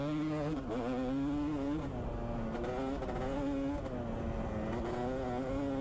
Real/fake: real